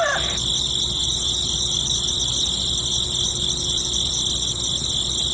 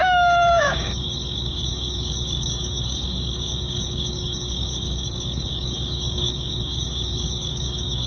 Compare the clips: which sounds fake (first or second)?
second